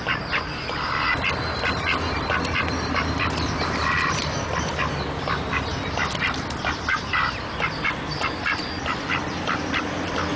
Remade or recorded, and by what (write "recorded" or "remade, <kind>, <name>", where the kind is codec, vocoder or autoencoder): recorded